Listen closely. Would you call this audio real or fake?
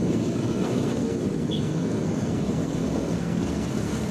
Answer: fake